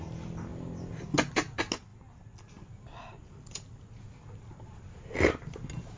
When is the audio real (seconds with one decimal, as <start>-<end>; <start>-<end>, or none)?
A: 0.0-6.0